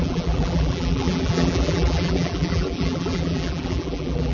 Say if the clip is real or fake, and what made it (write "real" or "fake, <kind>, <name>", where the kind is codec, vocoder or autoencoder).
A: fake, vocoder, BigVGAN v2